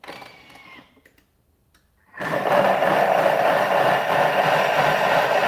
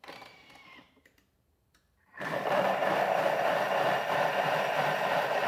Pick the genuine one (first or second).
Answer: first